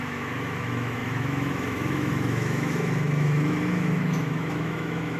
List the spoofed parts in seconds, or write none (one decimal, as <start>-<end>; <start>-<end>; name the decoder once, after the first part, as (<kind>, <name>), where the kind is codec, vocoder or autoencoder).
0.0-5.2 (autoencoder, DAC-VAE)